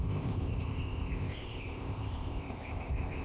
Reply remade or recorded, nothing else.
remade